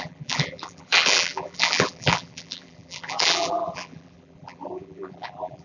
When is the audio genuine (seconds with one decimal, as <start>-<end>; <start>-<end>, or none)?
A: none